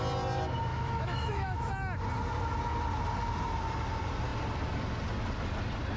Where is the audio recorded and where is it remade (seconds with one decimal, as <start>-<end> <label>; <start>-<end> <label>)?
0.0-0.7 recorded; 0.7-1.7 remade; 1.7-6.0 recorded